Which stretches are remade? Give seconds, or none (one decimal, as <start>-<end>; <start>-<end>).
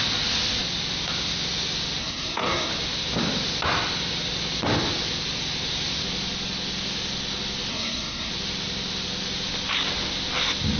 2.0-2.7; 7.7-8.3